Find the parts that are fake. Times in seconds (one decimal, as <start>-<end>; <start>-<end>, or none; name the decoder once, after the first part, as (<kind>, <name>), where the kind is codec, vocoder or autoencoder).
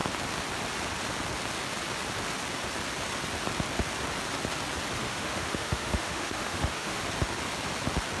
5.0-7.0 (autoencoder, DAC-VAE)